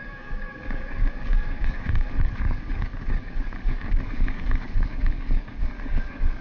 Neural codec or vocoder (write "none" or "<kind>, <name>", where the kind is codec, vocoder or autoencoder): codec, DAC